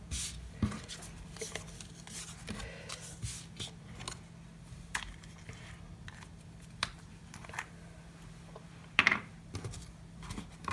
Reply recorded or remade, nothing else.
recorded